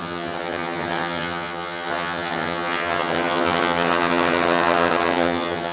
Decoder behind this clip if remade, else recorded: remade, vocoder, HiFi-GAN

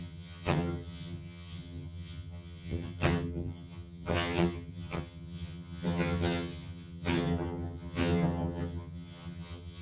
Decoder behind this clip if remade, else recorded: remade, vocoder, HiFi-GAN